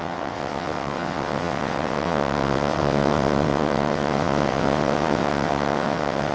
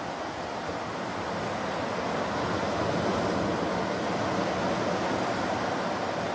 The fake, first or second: first